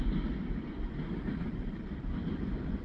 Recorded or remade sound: recorded